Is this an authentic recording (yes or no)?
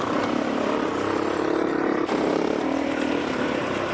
yes